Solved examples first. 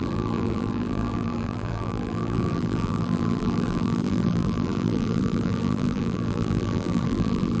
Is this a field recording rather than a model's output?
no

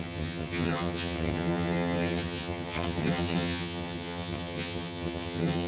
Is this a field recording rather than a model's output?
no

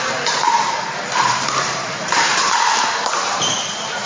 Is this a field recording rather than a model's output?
no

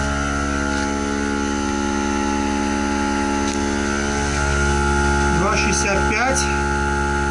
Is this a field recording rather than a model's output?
yes